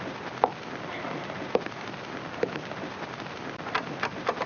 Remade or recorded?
remade